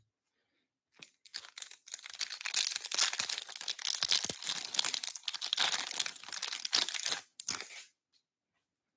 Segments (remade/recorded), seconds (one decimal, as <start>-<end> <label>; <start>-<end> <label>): 0.0-9.0 recorded